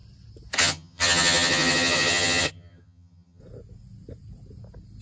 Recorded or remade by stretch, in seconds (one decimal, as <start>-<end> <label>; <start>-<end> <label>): 0.0-0.6 recorded; 0.6-3.4 remade; 3.4-5.0 recorded